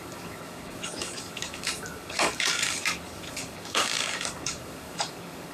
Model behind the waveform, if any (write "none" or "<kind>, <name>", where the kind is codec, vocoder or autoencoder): codec, DAC